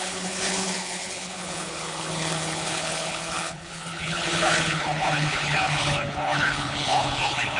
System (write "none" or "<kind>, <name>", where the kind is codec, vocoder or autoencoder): codec, HILCodec